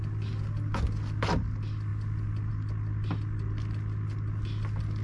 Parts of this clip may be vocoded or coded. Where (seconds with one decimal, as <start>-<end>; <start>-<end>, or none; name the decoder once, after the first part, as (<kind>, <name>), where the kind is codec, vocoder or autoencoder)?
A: none